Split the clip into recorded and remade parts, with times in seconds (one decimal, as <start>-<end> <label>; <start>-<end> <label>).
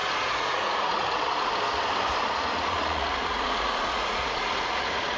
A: 0.0-1.5 remade; 1.5-2.5 recorded; 2.5-5.2 remade